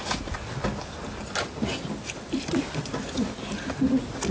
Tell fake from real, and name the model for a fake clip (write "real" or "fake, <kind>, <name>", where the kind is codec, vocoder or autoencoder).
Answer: real